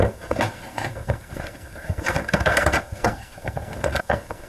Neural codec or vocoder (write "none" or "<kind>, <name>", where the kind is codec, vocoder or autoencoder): codec, SNAC